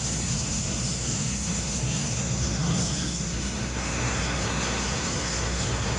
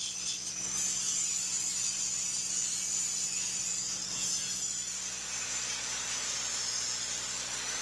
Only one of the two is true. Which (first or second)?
second